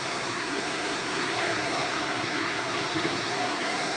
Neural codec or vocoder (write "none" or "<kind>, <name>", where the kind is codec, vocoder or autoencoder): codec, SNAC